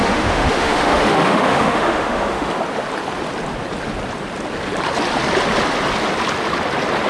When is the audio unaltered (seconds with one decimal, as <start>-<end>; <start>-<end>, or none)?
2.5-7.1